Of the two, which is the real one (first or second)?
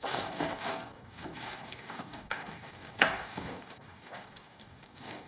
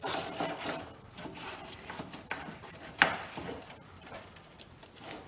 second